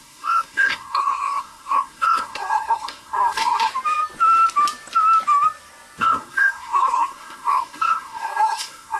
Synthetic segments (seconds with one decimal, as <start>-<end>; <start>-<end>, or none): 0.0-3.7; 6.0-9.0